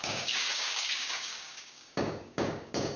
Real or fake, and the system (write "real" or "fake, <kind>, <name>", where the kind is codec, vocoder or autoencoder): fake, codec, DAC